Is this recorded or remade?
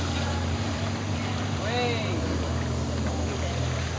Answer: recorded